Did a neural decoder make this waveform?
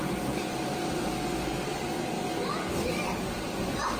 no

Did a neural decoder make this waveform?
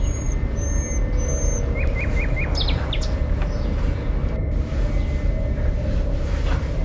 no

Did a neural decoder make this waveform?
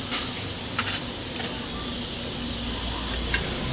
no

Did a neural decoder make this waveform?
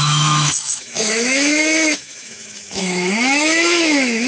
yes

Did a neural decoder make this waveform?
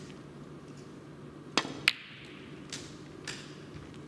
no